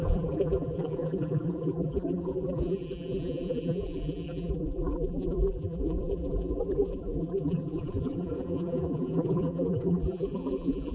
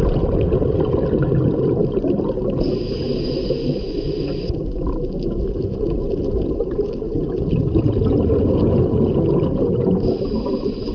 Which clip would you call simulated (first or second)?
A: first